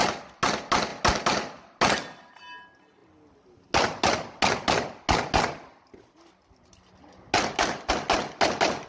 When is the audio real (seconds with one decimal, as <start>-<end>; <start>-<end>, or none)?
0.0-8.9